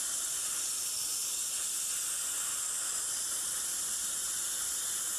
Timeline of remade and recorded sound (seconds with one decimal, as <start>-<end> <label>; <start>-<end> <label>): 0.0-5.2 recorded

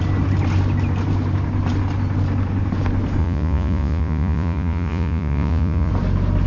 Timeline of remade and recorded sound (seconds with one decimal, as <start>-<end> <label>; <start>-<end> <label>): 0.0-3.2 recorded; 3.2-5.9 remade; 5.9-6.5 recorded

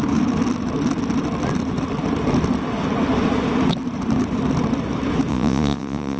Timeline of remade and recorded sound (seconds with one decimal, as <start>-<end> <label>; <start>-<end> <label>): 0.0-5.3 recorded; 5.3-6.2 remade